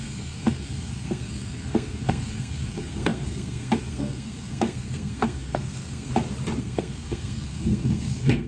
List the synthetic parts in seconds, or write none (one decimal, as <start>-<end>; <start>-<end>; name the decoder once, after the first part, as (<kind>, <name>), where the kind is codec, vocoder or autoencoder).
0.0-6.1 (codec, SNAC); 6.6-8.5